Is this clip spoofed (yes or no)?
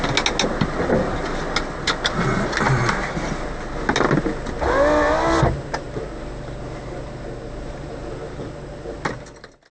no